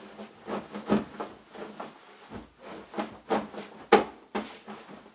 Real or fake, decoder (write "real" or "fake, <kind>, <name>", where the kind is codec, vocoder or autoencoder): real